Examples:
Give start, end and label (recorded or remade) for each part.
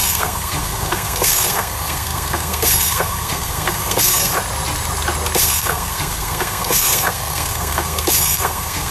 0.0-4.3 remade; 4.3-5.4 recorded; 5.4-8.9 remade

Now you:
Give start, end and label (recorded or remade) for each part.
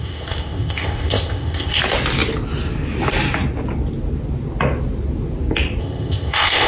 0.0-1.8 remade; 1.8-5.8 recorded; 5.8-6.7 remade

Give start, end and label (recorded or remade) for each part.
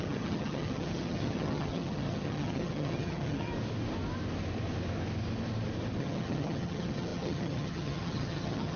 0.0-3.5 remade; 3.5-6.0 recorded; 6.0-8.8 remade